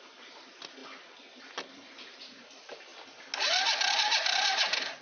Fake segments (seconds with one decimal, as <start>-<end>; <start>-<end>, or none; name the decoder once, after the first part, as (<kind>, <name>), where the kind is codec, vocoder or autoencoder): 0.0-0.8 (vocoder, BigVGAN v2); 2.1-2.9; 3.4-5.0